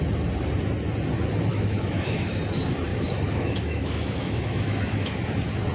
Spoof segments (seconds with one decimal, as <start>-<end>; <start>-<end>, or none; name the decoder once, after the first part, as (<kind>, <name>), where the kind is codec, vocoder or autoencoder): 1.5-2.4 (autoencoder, DAC-VAE); 2.9-5.2